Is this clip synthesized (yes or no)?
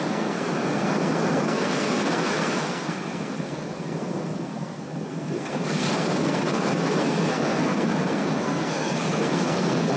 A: yes